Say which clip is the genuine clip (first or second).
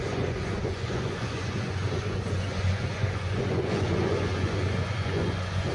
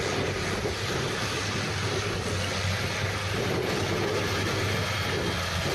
second